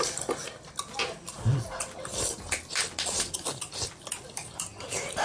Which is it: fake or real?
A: real